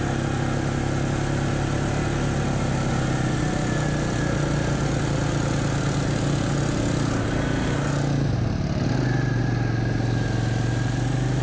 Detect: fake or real real